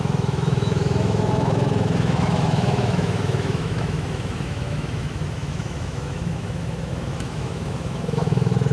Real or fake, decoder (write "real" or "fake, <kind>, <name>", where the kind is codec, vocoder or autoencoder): fake, autoencoder, DAC-VAE